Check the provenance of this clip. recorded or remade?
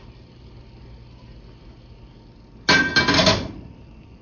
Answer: recorded